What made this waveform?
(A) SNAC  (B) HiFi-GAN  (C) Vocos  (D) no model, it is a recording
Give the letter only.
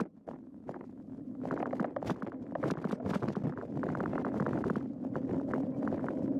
D